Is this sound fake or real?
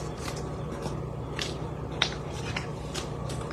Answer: fake